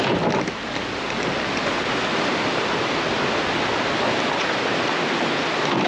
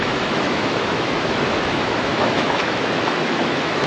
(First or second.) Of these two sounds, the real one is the first